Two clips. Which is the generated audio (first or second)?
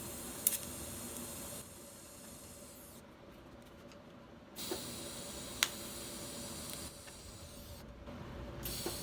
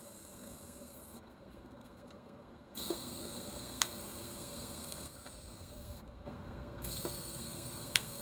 second